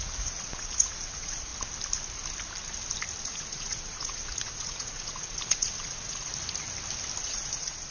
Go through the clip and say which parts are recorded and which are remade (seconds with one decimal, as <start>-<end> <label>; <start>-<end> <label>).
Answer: 0.0-1.5 remade; 1.5-3.2 recorded; 3.2-6.3 remade; 6.3-7.2 recorded; 7.2-7.9 remade